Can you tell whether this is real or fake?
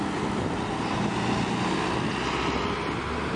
real